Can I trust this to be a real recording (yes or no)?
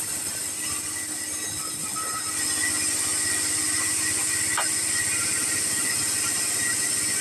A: yes